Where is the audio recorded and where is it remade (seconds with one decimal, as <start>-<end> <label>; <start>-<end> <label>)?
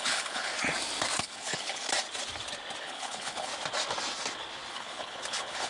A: 0.0-0.5 remade; 0.5-1.2 recorded; 1.2-1.9 remade; 1.9-2.8 recorded; 2.8-3.5 remade; 3.5-4.7 recorded; 4.7-5.7 remade